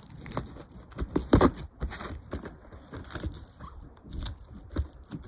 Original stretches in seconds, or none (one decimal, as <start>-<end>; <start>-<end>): 0.0-5.3